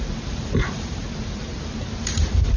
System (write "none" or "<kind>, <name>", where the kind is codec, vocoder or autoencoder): vocoder, BigVGAN v2